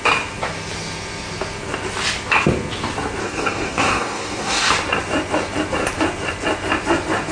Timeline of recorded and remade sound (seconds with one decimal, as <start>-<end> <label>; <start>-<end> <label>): 0.0-3.2 recorded; 3.2-4.7 remade; 4.7-7.3 recorded